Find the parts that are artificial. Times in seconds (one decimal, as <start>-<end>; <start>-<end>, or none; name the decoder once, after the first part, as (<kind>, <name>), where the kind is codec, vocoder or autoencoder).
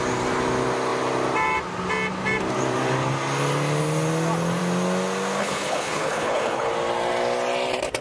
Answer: 5.4-6.7 (codec, HILCodec)